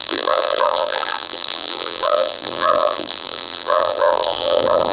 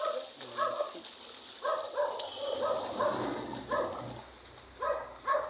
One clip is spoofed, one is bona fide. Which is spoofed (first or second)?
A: first